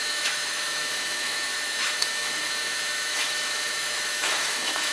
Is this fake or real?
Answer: fake